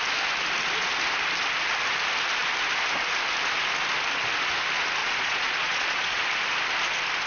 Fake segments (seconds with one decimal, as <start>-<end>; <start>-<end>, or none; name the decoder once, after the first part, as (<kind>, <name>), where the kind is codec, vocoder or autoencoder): 5.0-6.3 (vocoder, Vocos)

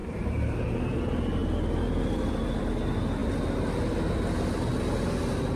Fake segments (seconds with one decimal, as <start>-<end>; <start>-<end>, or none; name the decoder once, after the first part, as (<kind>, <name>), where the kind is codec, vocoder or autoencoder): 0.0-0.9 (vocoder, BigVGAN v2)